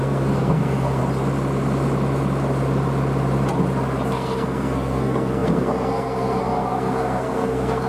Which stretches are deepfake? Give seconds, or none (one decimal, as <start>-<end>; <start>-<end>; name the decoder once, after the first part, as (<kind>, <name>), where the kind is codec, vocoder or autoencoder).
0.0-1.0 (codec, SNAC); 4.1-7.9